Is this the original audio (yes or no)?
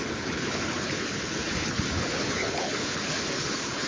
no